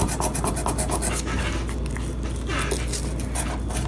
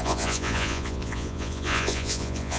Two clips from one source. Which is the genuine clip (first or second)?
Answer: first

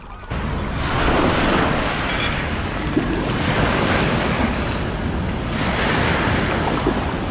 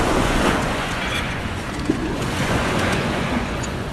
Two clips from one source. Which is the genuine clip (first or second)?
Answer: first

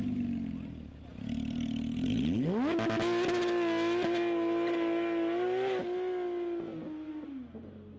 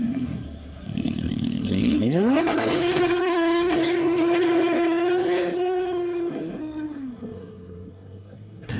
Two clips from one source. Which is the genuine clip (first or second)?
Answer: first